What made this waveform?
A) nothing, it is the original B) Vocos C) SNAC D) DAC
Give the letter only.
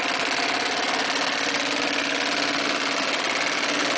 A